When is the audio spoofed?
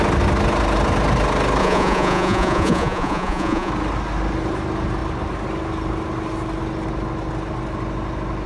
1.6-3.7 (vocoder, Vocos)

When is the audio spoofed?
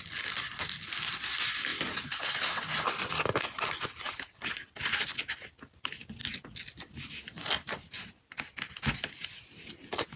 none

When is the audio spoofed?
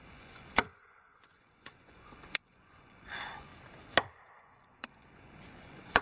0.0-3.5 (vocoder, Vocos); 4.4-6.0